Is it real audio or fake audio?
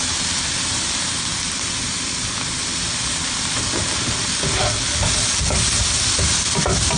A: real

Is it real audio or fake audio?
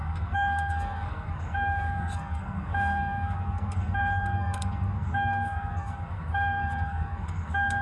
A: fake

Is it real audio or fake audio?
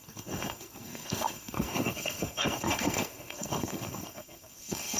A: fake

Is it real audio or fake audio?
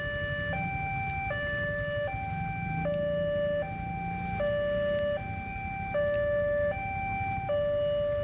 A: real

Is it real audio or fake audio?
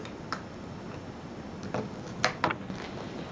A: real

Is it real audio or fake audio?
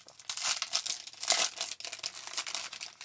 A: real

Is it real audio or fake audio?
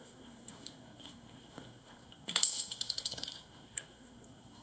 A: fake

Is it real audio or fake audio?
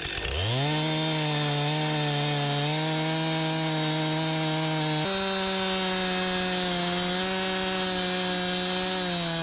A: real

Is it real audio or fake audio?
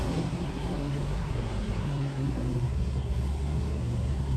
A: fake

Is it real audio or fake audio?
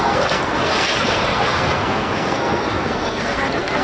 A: fake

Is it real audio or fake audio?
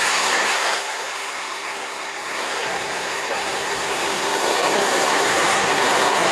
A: fake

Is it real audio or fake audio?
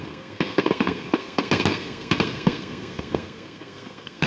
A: fake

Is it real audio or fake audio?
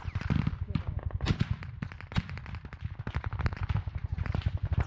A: real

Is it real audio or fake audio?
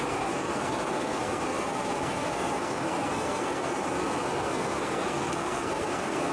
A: fake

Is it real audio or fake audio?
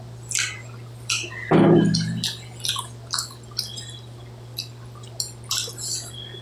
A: real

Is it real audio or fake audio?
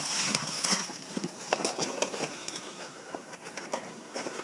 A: fake